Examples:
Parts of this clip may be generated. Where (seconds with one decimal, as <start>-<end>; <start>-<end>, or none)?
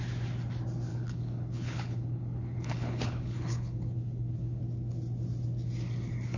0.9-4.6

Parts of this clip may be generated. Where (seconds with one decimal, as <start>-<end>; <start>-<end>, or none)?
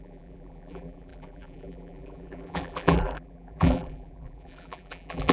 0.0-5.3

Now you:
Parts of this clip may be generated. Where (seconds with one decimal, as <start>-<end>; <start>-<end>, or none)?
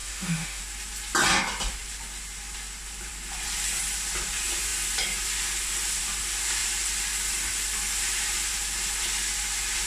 0.0-0.6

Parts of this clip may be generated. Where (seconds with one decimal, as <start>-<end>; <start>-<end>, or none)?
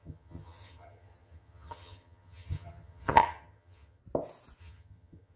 0.0-4.0; 4.6-5.4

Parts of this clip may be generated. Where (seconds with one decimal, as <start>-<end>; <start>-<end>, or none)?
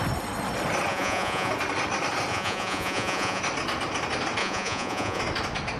0.9-1.5; 2.3-3.4; 4.4-5.2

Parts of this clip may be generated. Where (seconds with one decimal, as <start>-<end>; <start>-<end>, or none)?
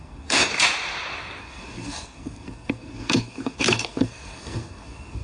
0.0-0.5; 1.4-5.2